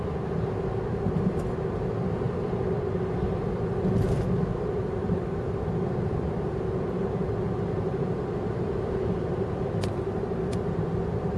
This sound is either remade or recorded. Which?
recorded